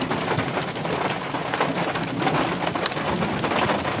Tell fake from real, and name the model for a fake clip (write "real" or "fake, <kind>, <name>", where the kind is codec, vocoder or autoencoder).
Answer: real